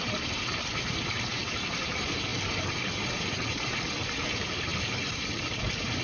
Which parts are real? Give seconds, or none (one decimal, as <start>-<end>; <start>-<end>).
none